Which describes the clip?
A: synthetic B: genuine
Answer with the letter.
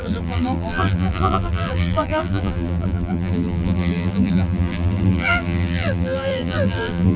A